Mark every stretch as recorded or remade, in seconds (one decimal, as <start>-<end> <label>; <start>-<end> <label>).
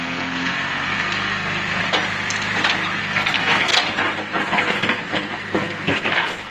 0.0-1.8 remade; 1.8-3.0 recorded; 3.0-3.7 remade; 3.7-4.2 recorded; 4.2-6.5 remade